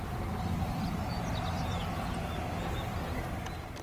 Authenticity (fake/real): real